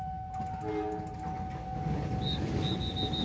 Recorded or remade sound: recorded